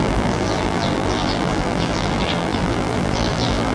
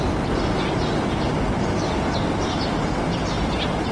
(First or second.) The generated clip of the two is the first